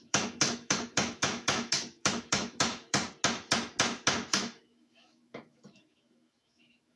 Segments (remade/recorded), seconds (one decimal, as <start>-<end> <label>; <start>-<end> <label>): 0.0-3.0 remade; 3.0-4.3 recorded; 4.3-7.0 remade